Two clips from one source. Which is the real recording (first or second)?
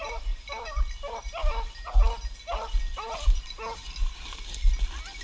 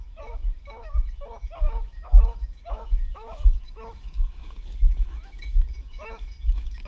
first